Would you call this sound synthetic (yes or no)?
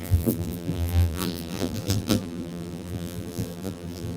yes